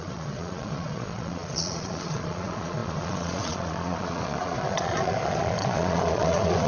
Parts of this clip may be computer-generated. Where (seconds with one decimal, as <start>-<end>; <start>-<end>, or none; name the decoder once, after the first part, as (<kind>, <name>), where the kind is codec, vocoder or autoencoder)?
0.0-6.7 (vocoder, Vocos)